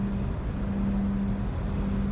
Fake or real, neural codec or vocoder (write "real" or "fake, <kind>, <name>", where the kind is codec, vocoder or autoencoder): real